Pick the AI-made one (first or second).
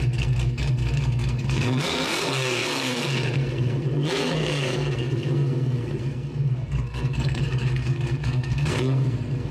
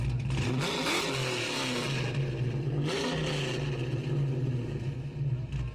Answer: first